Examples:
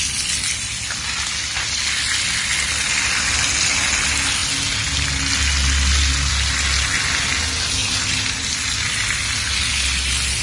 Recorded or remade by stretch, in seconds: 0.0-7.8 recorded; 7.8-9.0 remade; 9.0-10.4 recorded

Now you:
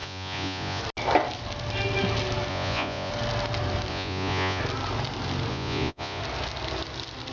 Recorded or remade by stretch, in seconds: 0.0-0.8 remade; 0.8-2.5 recorded; 2.5-3.1 remade; 3.1-3.9 recorded; 3.9-4.6 remade; 4.6-5.5 recorded; 5.5-6.2 remade; 6.2-7.3 recorded

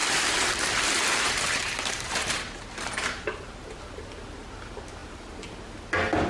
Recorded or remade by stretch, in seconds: 0.0-3.8 remade; 3.8-6.3 recorded

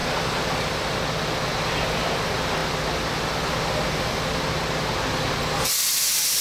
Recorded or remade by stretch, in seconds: 0.0-6.4 recorded

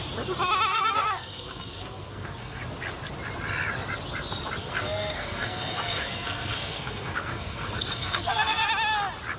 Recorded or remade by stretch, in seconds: 0.0-0.7 recorded; 0.7-2.6 remade; 2.6-4.6 recorded; 4.6-8.7 remade; 8.7-9.4 recorded